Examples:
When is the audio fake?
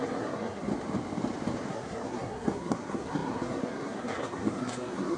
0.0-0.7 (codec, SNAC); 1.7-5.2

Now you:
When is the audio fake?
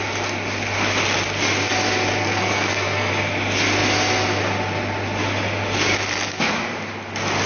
2.2-3.1 (codec, SNAC)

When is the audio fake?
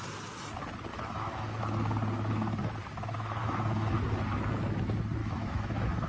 0.9-1.6 (autoencoder, DAC-VAE); 3.4-3.9; 5.2-6.1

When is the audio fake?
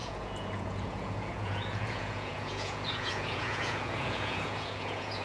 0.0-5.2 (vocoder, Vocos)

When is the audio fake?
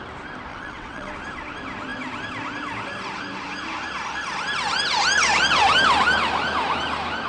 0.5-1.1 (vocoder, WaveNeXt)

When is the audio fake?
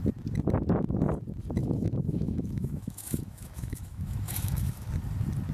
1.6-4.9 (autoencoder, DAC-VAE)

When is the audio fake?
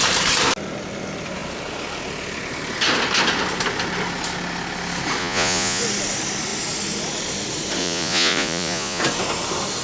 5.2-5.8 (vocoder, Vocos); 7.8-9.0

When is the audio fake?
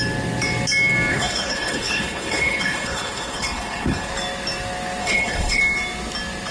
1.1-4.1 (codec, HILCodec); 5.0-5.6